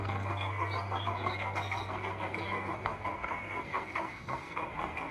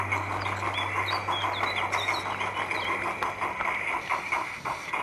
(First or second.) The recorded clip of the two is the second